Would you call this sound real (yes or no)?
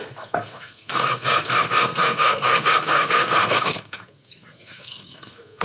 no